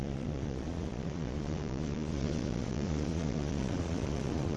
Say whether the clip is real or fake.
fake